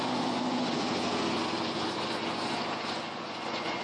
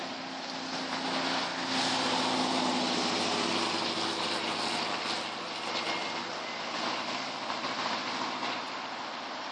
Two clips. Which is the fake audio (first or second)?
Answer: first